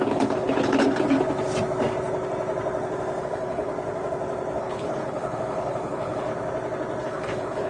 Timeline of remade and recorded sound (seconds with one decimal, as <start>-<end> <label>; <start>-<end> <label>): 0.0-0.8 remade; 0.8-3.2 recorded; 3.2-3.7 remade; 3.7-4.6 recorded; 4.6-6.3 remade; 6.3-7.0 recorded; 7.0-7.7 remade